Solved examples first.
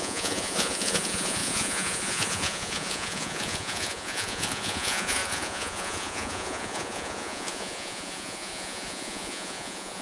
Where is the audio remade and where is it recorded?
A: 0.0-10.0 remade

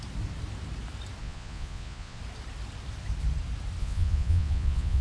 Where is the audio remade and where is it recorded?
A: 0.0-1.2 recorded; 1.2-2.2 remade; 2.2-3.8 recorded; 3.8-5.0 remade

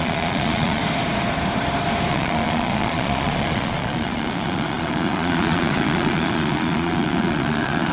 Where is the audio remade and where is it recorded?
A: 0.0-0.8 remade; 0.8-2.1 recorded; 2.1-7.9 remade

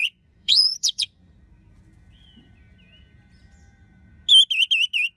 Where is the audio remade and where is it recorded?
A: 0.0-1.3 remade; 1.3-5.2 recorded

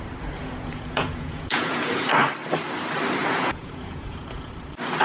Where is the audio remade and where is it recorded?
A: 0.0-0.4 recorded; 0.4-1.9 remade; 1.9-3.2 recorded; 3.2-4.5 remade; 4.5-5.0 recorded

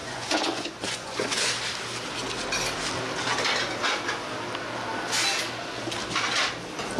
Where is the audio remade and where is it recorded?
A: 0.0-1.5 remade; 1.5-7.0 recorded

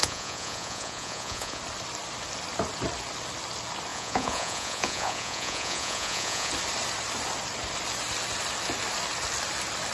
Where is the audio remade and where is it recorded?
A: 0.0-1.6 remade; 1.6-3.9 recorded; 3.9-6.5 remade; 6.5-9.9 recorded

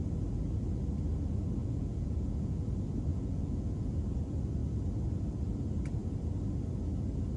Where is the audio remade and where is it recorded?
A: 0.0-1.6 recorded; 1.6-2.7 remade; 2.7-3.1 recorded; 3.1-4.0 remade; 4.0-7.4 recorded